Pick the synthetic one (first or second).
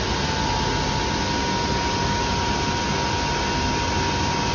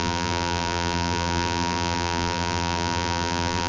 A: second